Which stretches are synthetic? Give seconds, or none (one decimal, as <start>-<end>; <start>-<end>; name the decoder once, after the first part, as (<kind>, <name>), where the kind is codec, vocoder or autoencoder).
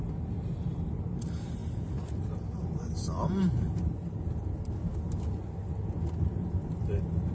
0.0-4.8 (vocoder, BigVGAN v2); 6.2-7.3